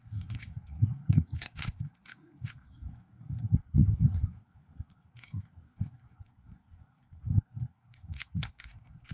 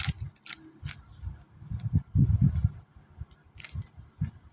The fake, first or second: first